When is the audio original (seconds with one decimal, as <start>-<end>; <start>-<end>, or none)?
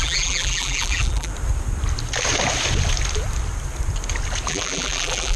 1.3-4.5